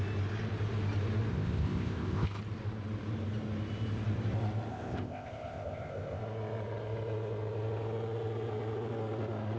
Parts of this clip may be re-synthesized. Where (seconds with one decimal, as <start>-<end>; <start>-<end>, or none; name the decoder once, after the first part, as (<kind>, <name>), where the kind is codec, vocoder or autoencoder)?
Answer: 1.3-2.4 (codec, ZipCodec); 4.7-6.2